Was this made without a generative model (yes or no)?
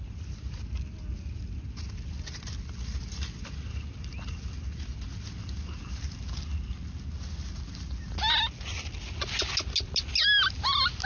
yes